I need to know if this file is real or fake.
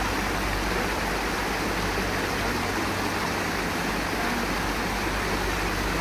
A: real